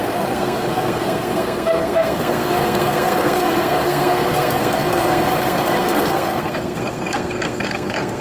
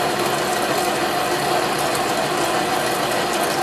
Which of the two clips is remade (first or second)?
first